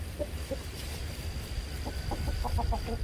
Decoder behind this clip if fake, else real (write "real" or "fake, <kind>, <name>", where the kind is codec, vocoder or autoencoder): real